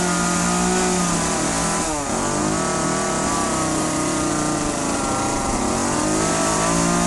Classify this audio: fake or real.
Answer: real